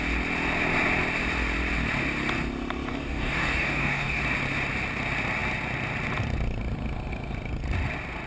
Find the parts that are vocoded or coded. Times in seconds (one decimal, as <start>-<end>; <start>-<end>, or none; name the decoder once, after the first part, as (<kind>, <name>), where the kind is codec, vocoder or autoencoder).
2.9-4.2 (codec, DAC)